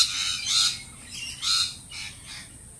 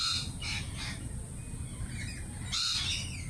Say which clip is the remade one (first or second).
second